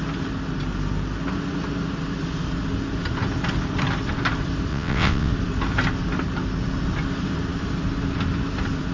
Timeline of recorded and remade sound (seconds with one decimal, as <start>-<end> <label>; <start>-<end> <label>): 0.0-4.7 recorded; 4.7-5.3 remade; 5.3-8.9 recorded